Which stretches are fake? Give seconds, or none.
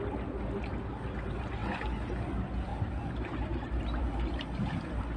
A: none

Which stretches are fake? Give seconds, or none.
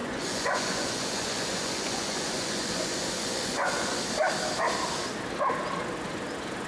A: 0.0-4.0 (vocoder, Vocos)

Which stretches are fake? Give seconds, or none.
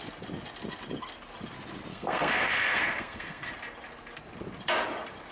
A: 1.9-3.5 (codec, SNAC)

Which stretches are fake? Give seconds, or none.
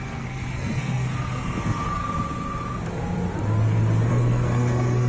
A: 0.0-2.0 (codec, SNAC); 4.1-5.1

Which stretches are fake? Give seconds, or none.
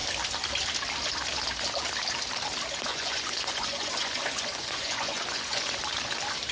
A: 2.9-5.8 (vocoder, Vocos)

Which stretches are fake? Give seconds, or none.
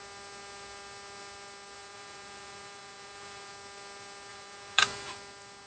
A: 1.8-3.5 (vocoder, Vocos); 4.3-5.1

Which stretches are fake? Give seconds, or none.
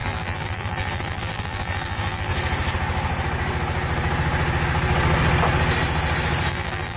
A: 0.0-2.3 (vocoder, BigVGAN v2); 6.5-7.0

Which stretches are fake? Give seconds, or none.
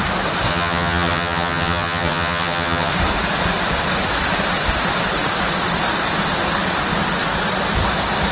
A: 0.5-2.9 (vocoder, HiFi-GAN)